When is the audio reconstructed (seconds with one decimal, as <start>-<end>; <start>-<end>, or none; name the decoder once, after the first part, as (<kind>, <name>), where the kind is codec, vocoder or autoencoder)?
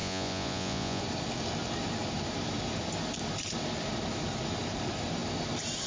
0.0-1.0 (vocoder, Vocos)